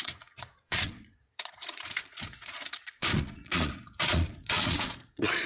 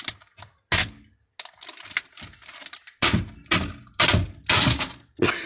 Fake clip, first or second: first